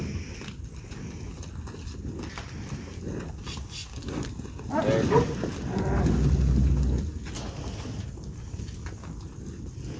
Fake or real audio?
real